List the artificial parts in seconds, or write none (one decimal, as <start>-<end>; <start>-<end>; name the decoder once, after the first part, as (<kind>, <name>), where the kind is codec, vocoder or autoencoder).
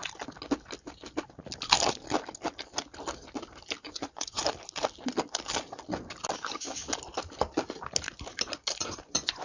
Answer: 3.8-4.4 (vocoder, Vocos); 8.8-9.4